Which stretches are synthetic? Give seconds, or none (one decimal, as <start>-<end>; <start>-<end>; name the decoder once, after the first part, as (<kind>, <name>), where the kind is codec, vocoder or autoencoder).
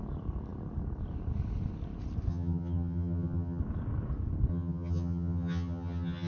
2.3-3.6 (vocoder, HiFi-GAN); 4.5-6.3